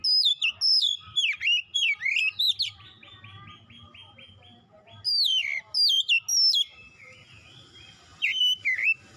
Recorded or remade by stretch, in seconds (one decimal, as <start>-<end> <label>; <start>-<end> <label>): 0.0-9.2 recorded